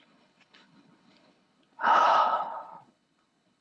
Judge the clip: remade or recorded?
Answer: remade